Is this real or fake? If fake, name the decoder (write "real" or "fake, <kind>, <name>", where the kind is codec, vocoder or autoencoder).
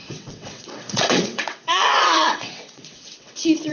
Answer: fake, vocoder, WaveNeXt